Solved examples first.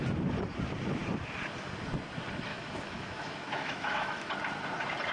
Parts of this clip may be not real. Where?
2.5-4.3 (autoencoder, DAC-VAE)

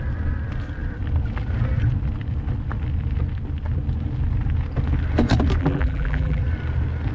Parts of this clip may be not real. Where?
5.6-6.4 (vocoder, BigVGAN v2)

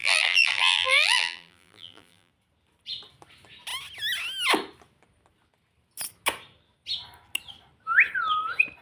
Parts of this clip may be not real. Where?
0.0-2.3 (vocoder, BigVGAN v2)

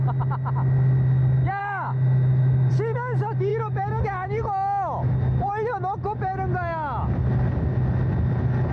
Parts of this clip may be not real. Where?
1.6-2.7 (autoencoder, DAC-VAE); 3.5-4.0

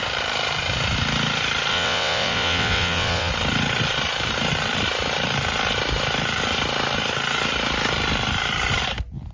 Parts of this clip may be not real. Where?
1.7-3.3 (vocoder, WaveNeXt)

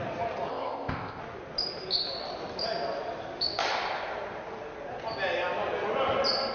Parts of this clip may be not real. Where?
0.5-1.2 (codec, ZipCodec)

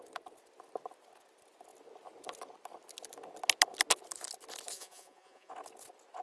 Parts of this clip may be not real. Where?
4.7-5.5 (vocoder, Vocos)